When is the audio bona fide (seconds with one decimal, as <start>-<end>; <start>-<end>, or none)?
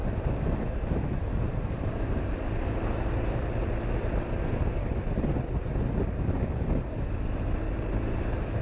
0.0-8.6